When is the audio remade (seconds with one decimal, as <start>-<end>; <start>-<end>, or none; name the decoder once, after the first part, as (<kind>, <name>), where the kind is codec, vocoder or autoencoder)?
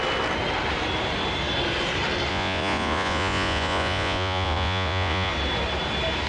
2.3-5.3 (vocoder, Vocos)